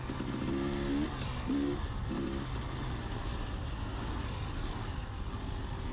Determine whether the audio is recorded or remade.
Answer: recorded